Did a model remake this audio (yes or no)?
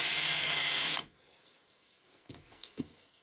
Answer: yes